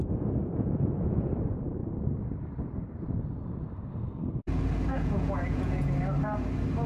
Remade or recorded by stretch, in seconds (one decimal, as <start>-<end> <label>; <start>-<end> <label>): 0.0-0.4 recorded; 0.4-1.3 remade; 1.3-4.9 recorded; 4.9-5.9 remade; 5.9-6.9 recorded